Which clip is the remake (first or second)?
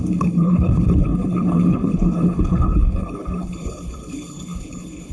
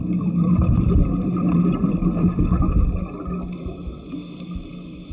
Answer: first